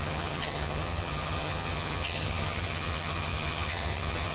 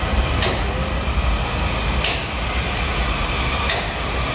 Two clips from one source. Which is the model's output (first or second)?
first